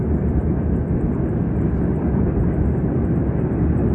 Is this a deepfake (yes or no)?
no